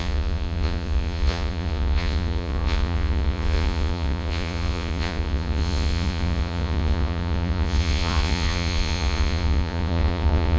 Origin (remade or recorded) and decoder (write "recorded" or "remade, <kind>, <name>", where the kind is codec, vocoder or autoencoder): remade, vocoder, Vocos